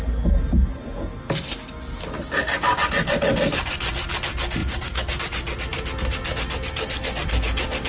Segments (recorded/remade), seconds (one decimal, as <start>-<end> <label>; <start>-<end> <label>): 0.0-4.6 recorded; 4.6-5.2 remade; 5.2-7.9 recorded